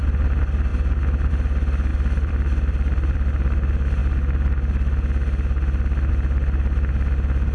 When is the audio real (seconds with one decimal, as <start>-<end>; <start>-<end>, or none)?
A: 0.0-1.9; 3.3-7.5